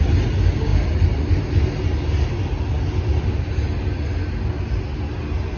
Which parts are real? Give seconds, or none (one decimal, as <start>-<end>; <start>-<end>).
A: 0.0-5.6